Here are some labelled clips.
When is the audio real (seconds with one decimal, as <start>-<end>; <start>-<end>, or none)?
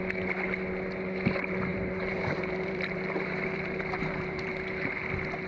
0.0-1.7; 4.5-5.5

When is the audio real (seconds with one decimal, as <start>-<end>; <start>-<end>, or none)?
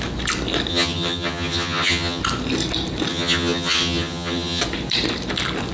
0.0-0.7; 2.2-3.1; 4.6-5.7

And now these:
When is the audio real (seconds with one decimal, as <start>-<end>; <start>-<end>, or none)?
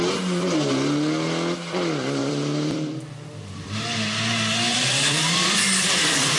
0.0-2.2; 2.9-4.7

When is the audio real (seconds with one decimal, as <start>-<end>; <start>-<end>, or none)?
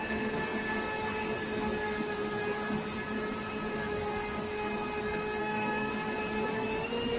0.0-5.4; 5.9-7.2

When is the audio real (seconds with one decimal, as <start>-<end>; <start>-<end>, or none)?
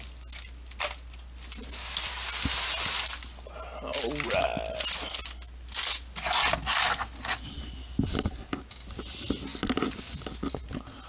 0.0-11.1